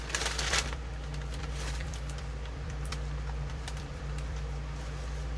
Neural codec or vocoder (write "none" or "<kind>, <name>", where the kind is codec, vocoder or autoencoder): vocoder, BigVGAN v2